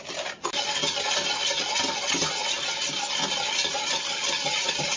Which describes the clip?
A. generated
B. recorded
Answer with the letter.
B